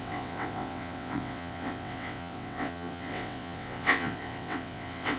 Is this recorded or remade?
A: remade